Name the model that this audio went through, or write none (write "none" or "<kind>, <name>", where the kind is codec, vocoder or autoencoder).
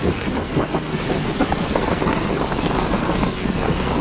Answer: codec, SNAC